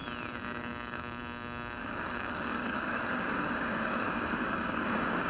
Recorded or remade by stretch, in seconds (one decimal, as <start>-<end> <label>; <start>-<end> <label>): 0.0-0.6 recorded; 0.6-5.3 remade